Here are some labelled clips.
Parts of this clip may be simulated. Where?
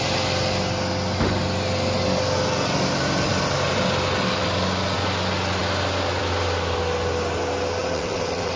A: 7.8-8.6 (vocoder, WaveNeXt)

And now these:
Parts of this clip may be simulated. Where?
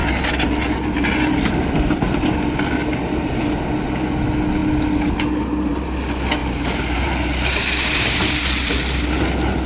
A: 2.8-3.6 (vocoder, BigVGAN v2); 6.4-9.2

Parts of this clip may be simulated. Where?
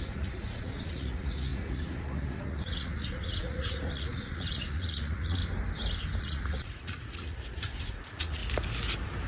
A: 0.0-5.4 (vocoder, Vocos); 6.2-8.4